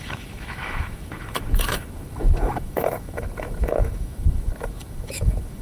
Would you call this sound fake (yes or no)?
yes